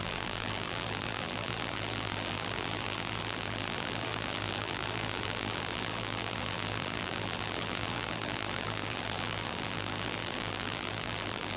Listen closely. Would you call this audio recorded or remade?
remade